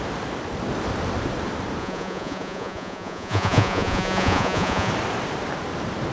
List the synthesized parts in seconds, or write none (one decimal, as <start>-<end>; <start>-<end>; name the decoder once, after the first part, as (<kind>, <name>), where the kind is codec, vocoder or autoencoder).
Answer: 1.8-4.9 (vocoder, Vocos)